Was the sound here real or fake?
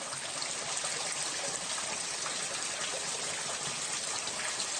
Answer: real